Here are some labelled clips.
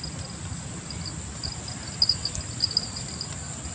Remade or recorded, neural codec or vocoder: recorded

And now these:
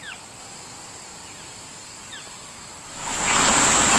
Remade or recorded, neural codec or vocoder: recorded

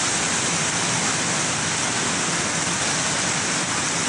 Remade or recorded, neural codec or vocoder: recorded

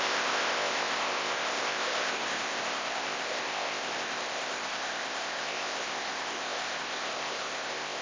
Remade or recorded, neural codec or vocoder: remade, codec, ZipCodec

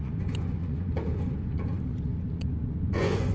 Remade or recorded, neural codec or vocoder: remade, vocoder, Vocos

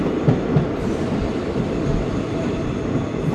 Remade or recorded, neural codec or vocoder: recorded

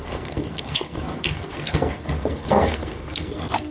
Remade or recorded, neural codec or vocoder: remade, codec, SNAC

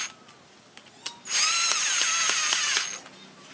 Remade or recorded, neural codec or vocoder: recorded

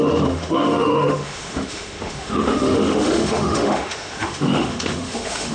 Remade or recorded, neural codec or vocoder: remade, autoencoder, DAC-VAE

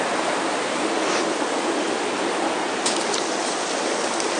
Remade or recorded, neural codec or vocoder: recorded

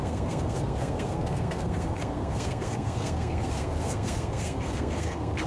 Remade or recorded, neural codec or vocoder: remade, codec, SNAC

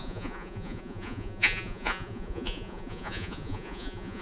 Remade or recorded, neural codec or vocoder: remade, vocoder, Vocos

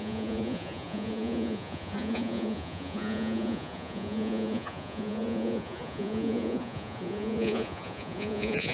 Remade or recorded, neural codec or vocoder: remade, vocoder, Vocos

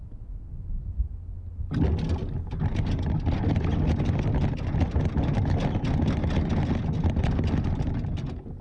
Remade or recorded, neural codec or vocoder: recorded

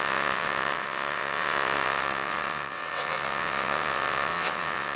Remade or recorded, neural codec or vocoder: remade, vocoder, WaveNeXt